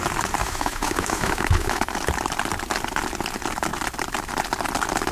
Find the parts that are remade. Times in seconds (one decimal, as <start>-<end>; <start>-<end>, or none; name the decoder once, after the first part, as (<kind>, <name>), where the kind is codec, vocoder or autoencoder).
0.4-1.9 (autoencoder, DAC-VAE)